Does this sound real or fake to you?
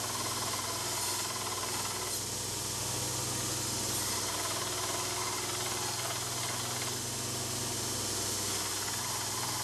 real